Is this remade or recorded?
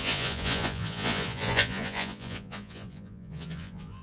remade